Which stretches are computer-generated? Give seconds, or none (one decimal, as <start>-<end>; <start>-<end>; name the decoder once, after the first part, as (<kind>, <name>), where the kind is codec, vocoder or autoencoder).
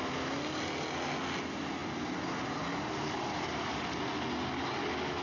none